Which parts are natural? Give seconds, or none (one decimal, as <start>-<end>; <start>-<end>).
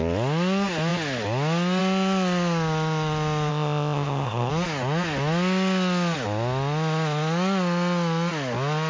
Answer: 0.0-3.5; 4.5-8.9